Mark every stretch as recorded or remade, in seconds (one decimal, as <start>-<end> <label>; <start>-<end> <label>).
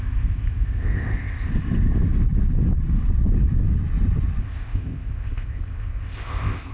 0.0-1.5 remade; 1.5-4.4 recorded; 4.4-6.7 remade